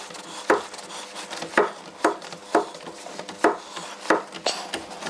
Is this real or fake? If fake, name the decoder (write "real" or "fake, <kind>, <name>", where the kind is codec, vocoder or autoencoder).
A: real